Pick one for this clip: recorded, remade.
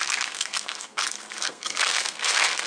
remade